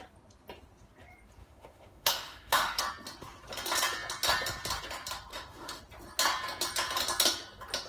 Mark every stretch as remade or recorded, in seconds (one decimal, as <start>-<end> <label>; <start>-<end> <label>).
0.0-1.4 recorded; 1.4-2.8 remade; 2.8-5.3 recorded; 5.3-5.8 remade; 5.8-7.9 recorded